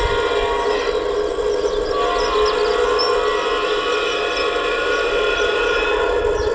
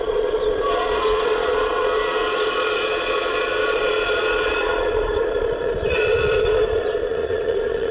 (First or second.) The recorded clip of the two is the first